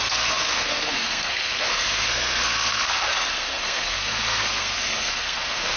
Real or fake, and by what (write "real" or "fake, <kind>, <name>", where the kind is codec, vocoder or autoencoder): fake, codec, SNAC